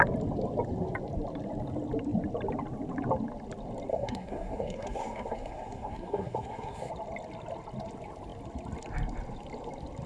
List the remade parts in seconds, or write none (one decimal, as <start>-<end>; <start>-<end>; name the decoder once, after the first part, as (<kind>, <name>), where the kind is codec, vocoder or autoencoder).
3.9-6.9 (codec, SNAC)